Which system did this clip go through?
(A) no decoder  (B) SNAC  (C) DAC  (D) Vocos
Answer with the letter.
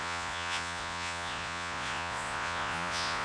D